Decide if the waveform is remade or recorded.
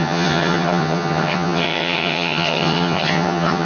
remade